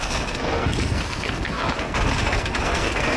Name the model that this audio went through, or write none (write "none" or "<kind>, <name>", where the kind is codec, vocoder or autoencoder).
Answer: codec, SNAC